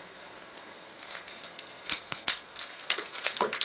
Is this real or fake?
fake